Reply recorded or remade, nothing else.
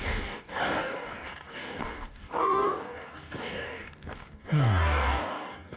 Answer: remade